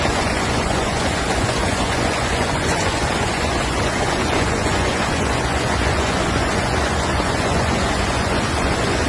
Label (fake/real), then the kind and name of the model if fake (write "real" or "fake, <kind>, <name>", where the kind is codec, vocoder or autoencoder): fake, vocoder, Vocos